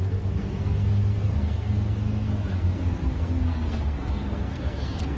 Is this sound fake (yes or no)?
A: yes